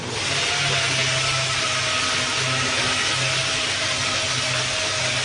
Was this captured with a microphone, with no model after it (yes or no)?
yes